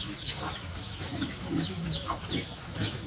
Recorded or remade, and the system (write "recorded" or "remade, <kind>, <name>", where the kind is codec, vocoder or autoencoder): remade, autoencoder, DAC-VAE